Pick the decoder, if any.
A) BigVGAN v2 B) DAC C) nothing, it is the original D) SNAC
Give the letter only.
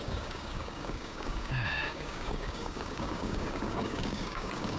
B